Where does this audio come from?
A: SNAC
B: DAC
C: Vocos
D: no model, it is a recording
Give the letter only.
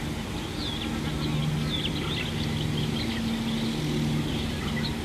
D